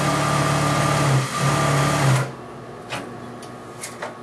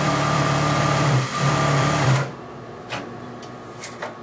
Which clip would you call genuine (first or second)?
first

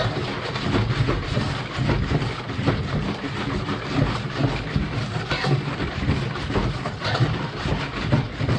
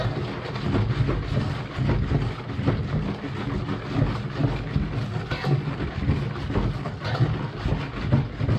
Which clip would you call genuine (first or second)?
second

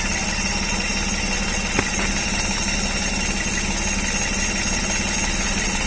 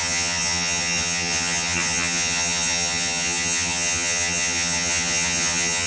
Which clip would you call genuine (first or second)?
first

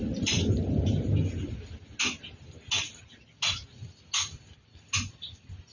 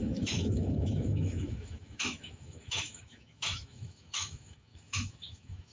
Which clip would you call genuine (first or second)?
first